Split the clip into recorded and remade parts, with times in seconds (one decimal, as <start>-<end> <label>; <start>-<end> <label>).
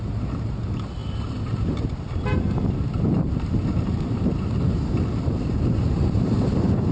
0.0-6.9 remade